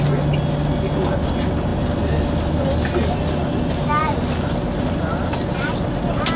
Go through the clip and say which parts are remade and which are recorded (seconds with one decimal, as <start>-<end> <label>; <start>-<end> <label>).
0.0-6.4 recorded